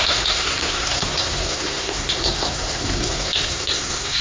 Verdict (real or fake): fake